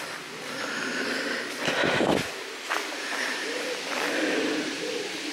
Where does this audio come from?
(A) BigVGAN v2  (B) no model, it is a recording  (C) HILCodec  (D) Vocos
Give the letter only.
B